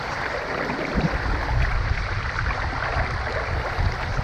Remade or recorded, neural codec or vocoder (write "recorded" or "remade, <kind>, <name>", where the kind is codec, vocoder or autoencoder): recorded